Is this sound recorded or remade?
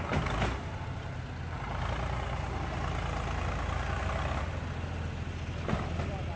recorded